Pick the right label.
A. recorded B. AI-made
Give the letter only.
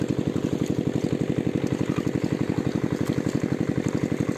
A